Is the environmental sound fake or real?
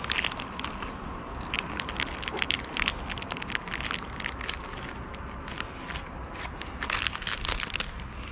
real